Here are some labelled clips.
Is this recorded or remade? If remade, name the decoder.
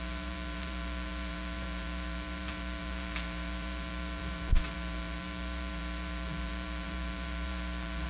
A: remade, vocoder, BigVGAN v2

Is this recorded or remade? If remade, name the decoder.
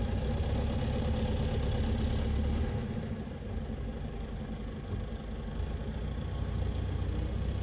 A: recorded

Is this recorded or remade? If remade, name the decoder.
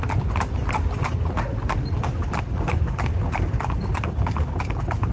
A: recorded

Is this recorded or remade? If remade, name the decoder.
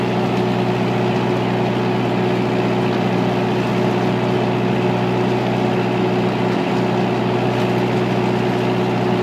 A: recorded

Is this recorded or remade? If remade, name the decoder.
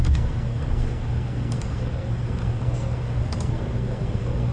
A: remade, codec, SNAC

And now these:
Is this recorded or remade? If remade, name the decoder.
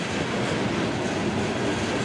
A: recorded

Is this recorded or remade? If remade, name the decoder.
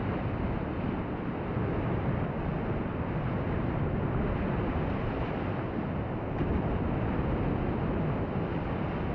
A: recorded